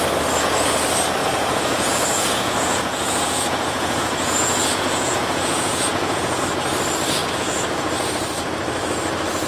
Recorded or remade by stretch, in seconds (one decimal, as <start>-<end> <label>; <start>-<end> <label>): 0.0-1.2 recorded; 1.2-6.4 remade; 6.4-7.2 recorded; 7.2-7.9 remade; 7.9-9.5 recorded